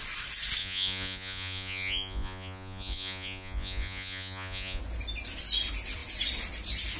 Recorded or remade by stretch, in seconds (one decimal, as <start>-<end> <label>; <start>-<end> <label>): 0.0-0.6 recorded; 0.6-4.8 remade; 4.8-7.0 recorded